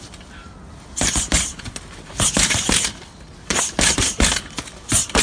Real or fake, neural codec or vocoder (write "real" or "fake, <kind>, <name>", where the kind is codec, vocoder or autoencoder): real